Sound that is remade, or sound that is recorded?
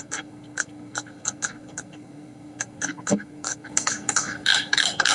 remade